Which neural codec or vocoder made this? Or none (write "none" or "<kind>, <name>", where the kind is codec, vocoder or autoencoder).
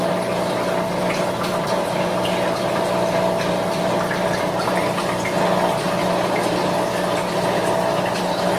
none